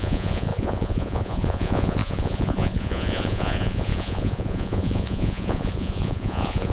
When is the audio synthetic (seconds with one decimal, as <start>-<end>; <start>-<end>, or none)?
0.0-6.7